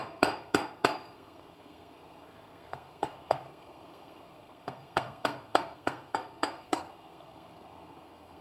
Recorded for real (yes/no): no